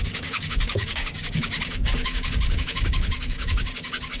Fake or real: fake